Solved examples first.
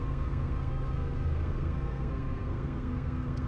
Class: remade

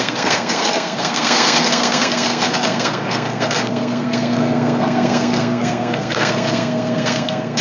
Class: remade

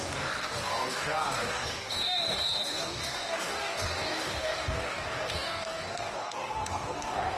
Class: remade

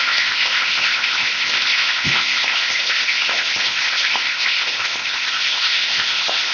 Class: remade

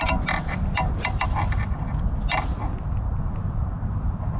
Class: recorded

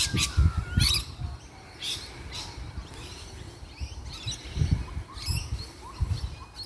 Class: recorded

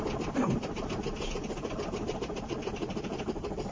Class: recorded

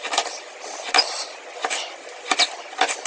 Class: recorded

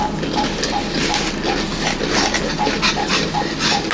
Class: recorded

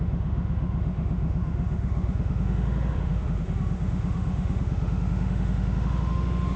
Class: remade